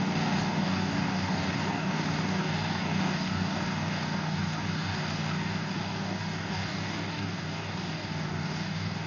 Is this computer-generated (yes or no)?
yes